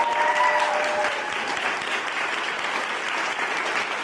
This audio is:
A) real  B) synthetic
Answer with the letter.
A